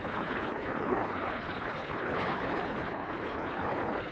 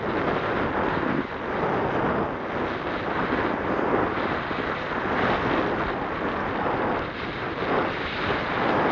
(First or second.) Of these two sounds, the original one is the second